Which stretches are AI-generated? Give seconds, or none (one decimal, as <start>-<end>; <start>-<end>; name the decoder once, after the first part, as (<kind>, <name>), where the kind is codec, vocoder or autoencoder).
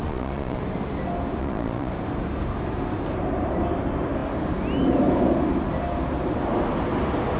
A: 0.0-0.6 (vocoder, Vocos); 1.4-1.9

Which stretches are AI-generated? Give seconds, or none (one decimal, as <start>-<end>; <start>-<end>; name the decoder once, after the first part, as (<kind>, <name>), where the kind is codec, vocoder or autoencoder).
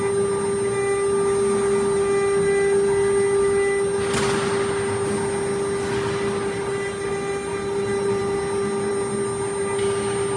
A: none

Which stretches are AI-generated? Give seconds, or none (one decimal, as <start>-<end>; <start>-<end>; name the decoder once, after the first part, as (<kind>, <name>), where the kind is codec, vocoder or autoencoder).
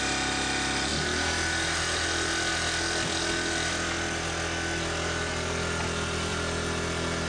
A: none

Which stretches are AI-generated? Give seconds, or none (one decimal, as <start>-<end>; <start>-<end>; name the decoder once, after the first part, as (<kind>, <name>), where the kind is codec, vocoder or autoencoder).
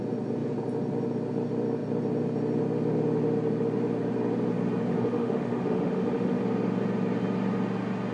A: 4.9-6.4 (autoencoder, DAC-VAE)